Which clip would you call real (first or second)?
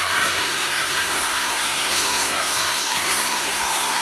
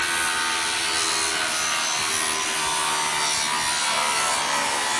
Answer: second